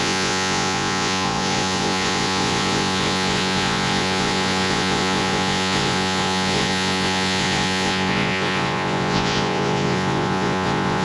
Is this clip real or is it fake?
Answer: fake